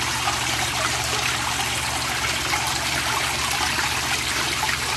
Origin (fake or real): real